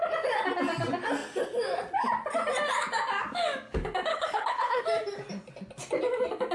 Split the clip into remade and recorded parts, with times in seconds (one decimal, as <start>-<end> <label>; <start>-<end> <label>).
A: 0.0-4.1 recorded; 4.1-4.8 remade; 4.8-6.5 recorded